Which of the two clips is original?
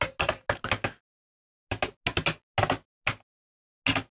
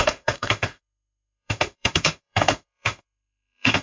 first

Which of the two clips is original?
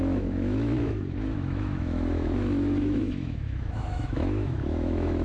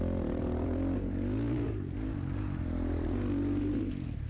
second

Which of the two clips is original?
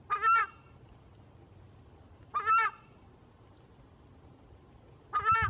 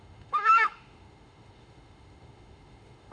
first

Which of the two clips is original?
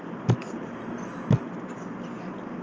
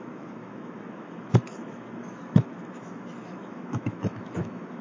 first